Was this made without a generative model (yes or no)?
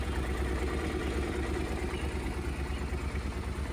yes